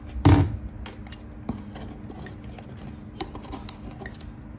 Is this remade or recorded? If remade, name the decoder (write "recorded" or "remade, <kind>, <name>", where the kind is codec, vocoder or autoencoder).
recorded